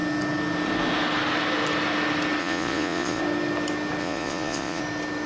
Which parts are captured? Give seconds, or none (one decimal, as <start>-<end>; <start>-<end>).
0.0-2.4; 3.2-4.0; 4.8-5.3